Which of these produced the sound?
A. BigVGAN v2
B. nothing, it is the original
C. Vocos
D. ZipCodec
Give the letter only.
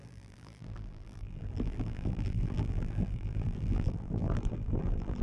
A